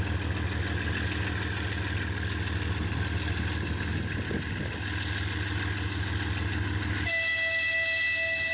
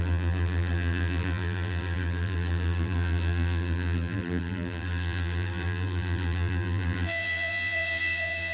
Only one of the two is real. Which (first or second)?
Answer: first